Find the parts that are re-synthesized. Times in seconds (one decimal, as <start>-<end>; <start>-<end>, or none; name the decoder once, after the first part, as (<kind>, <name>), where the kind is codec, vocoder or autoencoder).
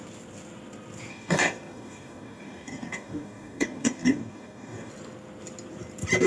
1.1-4.9 (codec, DAC)